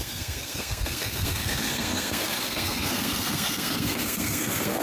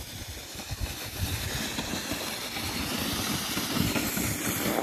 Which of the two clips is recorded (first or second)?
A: second